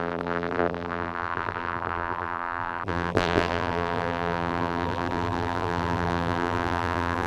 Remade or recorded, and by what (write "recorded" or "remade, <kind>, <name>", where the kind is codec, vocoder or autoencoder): remade, vocoder, BigVGAN v2